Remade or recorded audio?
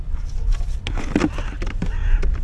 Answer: recorded